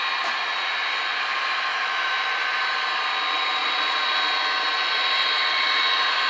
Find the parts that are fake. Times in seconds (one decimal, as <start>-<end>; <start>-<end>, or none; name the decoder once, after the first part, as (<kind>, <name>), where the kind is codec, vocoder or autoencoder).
1.7-2.3 (autoencoder, DAC-VAE)